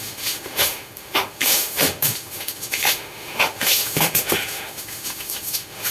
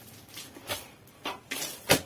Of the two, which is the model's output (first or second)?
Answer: first